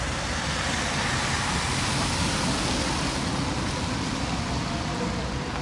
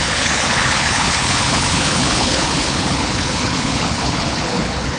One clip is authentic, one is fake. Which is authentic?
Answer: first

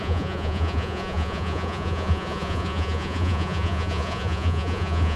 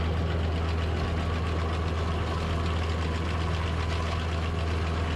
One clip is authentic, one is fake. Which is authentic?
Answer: second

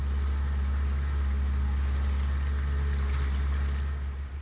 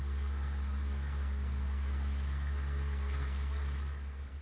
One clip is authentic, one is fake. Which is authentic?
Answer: first